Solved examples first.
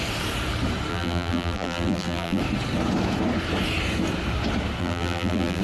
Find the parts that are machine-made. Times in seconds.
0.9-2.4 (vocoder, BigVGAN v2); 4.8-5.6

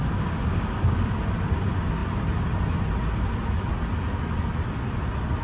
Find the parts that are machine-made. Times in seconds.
0.0-1.1 (codec, DAC)

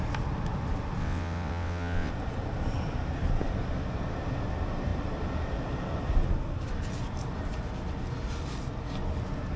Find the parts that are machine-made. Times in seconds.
1.0-2.1 (vocoder, WaveNeXt)

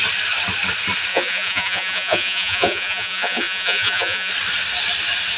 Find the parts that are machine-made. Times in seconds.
1.1-4.3 (vocoder, Vocos)

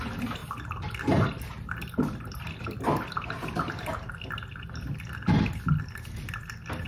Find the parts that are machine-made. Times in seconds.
none

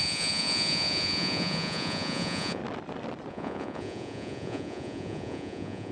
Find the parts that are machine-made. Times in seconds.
0.0-2.6 (vocoder, Vocos); 3.3-5.9

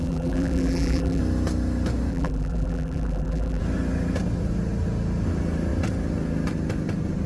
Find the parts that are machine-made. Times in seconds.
0.0-1.2 (vocoder, BigVGAN v2); 2.1-3.6

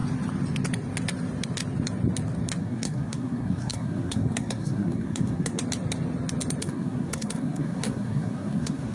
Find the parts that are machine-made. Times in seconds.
2.6-5.6 (codec, SNAC); 6.6-8.9